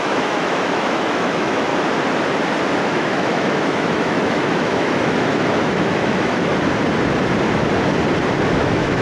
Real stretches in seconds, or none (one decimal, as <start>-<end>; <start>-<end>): 1.7-2.8; 6.5-8.5